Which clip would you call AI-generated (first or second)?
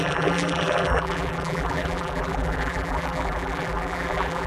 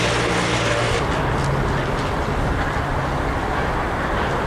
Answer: first